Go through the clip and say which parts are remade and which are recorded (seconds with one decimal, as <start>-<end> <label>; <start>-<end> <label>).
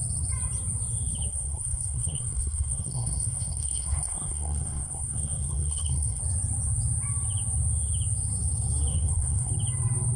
0.0-1.3 recorded; 1.3-6.2 remade; 6.2-8.9 recorded; 8.9-9.5 remade; 9.5-10.2 recorded